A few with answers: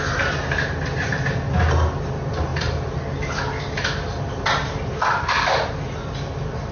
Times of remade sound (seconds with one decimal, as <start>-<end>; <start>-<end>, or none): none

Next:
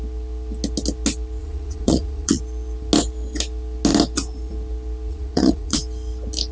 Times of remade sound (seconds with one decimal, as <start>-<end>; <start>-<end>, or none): 1.4-2.4; 5.1-5.8

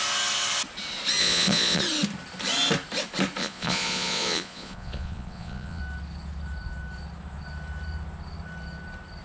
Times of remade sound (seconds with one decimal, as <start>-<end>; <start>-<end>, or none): 1.2-1.8; 3.4-5.8